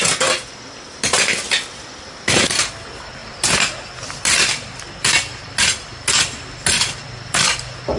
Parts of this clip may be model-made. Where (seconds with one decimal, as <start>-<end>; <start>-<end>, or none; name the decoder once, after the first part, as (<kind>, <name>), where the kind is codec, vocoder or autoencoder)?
none